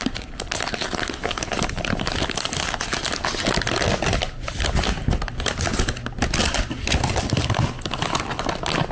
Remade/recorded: recorded